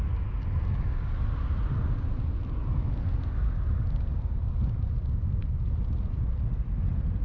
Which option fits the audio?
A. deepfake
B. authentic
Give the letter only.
B